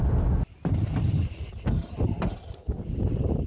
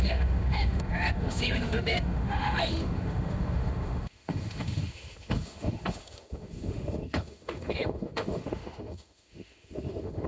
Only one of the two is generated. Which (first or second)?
second